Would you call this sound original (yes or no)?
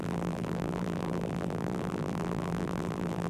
no